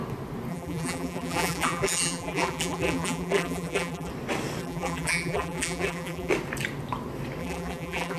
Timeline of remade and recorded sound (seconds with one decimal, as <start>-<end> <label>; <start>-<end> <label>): 0.0-0.5 recorded; 0.5-4.1 remade; 4.1-4.6 recorded; 4.6-6.3 remade; 6.3-7.4 recorded; 7.4-8.2 remade